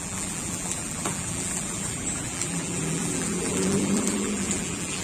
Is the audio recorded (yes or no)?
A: no